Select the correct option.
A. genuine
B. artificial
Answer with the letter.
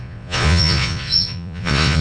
B